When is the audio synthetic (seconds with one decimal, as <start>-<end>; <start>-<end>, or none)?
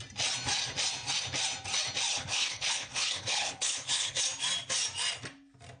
2.1-4.2